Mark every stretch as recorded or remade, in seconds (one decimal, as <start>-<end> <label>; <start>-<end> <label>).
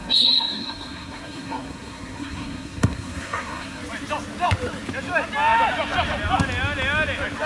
0.0-3.8 remade; 3.8-7.5 recorded